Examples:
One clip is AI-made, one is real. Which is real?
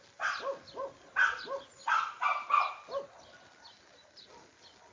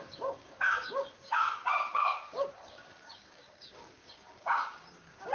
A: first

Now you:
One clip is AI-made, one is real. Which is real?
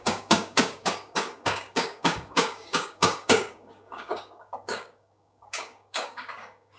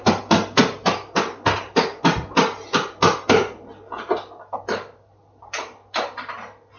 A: second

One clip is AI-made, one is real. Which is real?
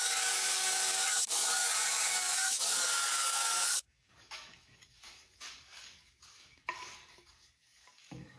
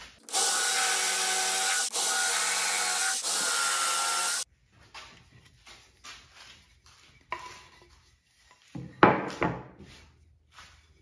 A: second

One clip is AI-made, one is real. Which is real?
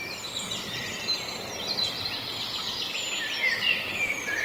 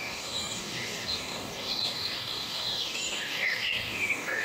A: first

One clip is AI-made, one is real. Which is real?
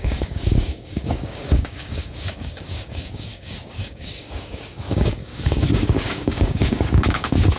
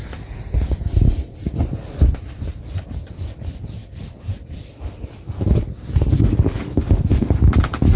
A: second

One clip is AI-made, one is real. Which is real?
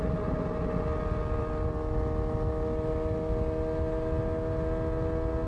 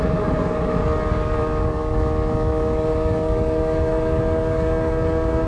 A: first